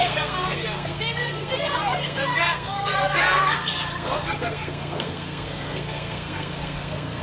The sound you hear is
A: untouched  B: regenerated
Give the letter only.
B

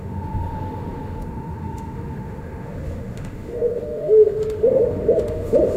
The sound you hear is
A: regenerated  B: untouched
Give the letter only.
A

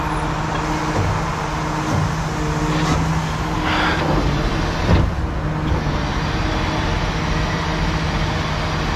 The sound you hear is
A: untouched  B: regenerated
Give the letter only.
A